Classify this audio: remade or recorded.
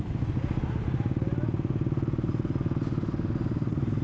recorded